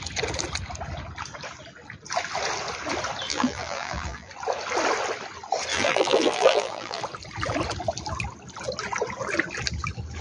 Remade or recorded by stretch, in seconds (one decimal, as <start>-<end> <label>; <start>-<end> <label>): 0.0-3.3 recorded; 3.3-4.3 remade; 4.3-5.7 recorded; 5.7-7.0 remade; 7.0-10.2 recorded